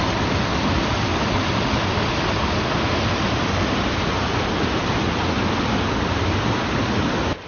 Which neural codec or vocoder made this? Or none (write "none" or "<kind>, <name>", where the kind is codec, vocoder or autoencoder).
none